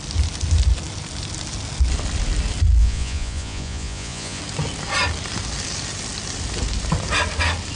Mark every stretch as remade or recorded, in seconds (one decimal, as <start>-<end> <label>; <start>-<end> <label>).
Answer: 0.0-2.8 recorded; 2.8-4.4 remade; 4.4-7.8 recorded

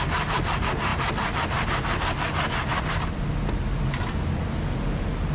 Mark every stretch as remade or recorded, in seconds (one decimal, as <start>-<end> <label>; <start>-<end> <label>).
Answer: 0.0-5.3 recorded

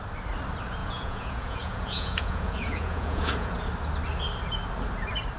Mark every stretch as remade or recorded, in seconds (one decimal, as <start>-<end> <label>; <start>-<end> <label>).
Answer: 0.0-0.8 recorded; 0.8-3.6 remade; 3.6-5.4 recorded

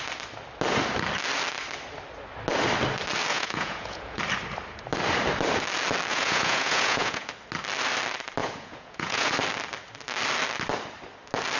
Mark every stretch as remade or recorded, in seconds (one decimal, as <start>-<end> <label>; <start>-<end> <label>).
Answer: 0.0-3.3 recorded; 3.3-4.2 remade; 4.2-6.1 recorded; 6.1-7.3 remade; 7.3-8.4 recorded; 8.4-9.3 remade; 9.3-11.6 recorded